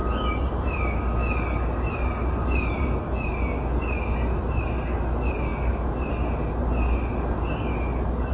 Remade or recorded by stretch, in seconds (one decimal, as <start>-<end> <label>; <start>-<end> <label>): 0.0-0.8 remade; 0.8-2.2 recorded; 2.2-3.3 remade; 3.3-8.3 recorded